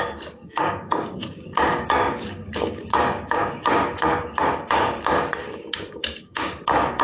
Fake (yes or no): yes